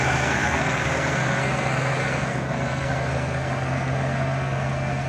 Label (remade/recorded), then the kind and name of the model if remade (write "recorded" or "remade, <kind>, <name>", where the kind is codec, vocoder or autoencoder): remade, codec, SNAC